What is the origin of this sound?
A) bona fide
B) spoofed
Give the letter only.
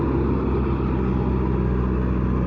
A